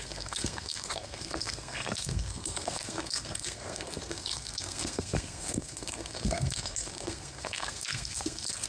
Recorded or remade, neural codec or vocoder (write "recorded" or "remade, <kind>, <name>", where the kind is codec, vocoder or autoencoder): remade, codec, SNAC